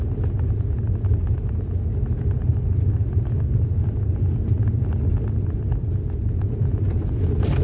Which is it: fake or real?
real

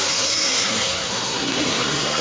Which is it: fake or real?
fake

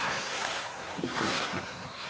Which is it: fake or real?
fake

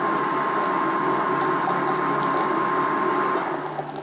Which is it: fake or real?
real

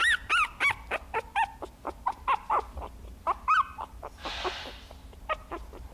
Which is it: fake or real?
real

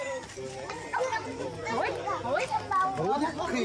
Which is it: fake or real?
real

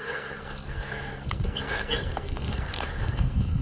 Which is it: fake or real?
fake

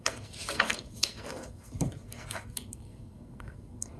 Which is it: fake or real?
fake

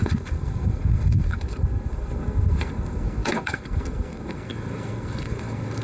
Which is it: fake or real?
fake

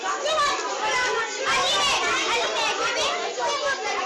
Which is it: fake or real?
real